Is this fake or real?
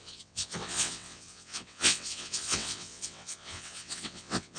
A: fake